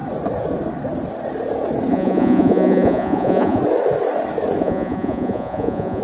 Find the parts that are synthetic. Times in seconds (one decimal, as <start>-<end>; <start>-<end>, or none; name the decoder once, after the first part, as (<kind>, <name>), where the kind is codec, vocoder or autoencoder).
1.9-3.6 (vocoder, Vocos); 4.6-6.0